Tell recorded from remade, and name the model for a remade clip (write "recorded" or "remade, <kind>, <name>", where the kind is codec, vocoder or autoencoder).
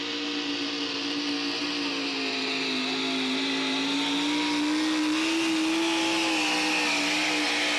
recorded